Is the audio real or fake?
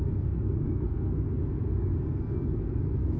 fake